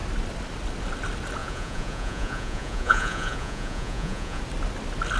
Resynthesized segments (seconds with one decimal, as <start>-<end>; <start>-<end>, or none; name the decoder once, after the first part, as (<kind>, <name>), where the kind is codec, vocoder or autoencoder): 1.4-4.4 (vocoder, Vocos)